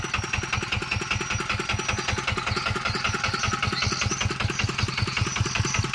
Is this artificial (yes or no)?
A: no